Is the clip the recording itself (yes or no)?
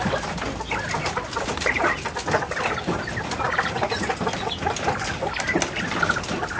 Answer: yes